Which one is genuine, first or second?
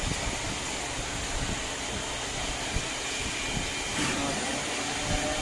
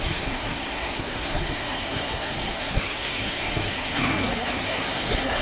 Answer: first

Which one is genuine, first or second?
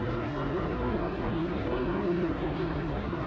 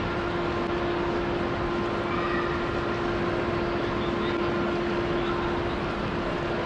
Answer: second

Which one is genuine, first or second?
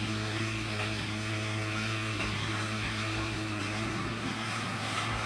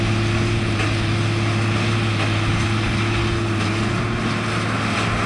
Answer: second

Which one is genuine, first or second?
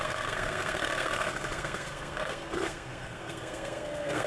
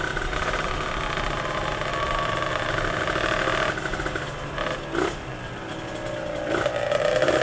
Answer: second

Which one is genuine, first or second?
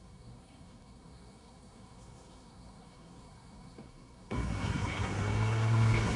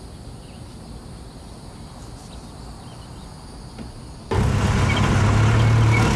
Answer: second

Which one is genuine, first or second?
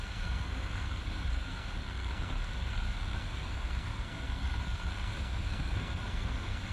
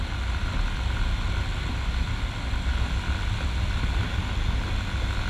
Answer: second